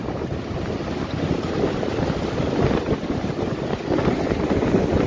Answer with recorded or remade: recorded